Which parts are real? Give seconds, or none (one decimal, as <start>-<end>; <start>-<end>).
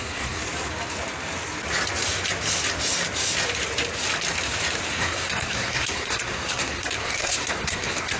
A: 0.4-4.9